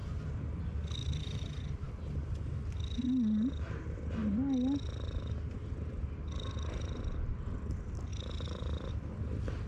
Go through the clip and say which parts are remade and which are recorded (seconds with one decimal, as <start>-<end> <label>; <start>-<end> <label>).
0.0-1.0 recorded; 1.0-1.9 remade; 1.9-9.7 recorded

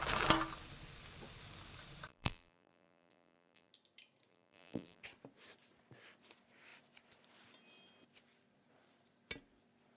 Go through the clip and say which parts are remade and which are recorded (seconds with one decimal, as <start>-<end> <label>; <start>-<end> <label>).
0.0-2.1 recorded; 2.1-3.7 remade; 3.7-4.3 recorded; 4.3-5.0 remade; 5.0-10.0 recorded

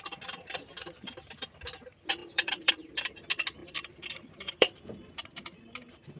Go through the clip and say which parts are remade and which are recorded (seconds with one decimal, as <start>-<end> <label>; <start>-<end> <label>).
0.0-2.2 recorded; 2.2-2.7 remade; 2.7-3.6 recorded; 3.6-5.1 remade; 5.1-6.2 recorded

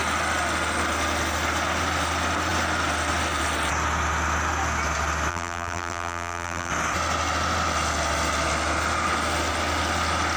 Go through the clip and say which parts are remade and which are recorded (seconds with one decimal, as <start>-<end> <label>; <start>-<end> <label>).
0.0-5.3 recorded; 5.3-6.7 remade; 6.7-10.4 recorded

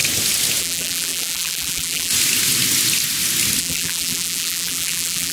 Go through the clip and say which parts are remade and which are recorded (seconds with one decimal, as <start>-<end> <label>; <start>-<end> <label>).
0.0-0.6 recorded; 0.6-2.1 remade; 2.1-3.6 recorded; 3.6-5.3 remade